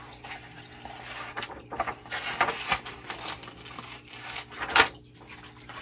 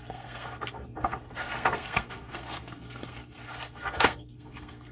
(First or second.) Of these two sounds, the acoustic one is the first